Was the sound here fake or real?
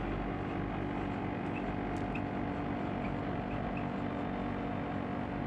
real